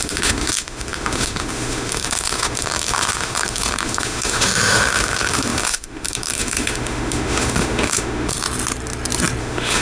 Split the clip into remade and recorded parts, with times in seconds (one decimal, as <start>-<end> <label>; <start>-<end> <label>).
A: 0.0-8.3 remade; 8.3-9.4 recorded; 9.4-9.8 remade